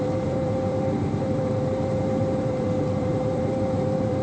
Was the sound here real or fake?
fake